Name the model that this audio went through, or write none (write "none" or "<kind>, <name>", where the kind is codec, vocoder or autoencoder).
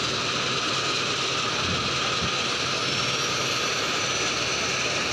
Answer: none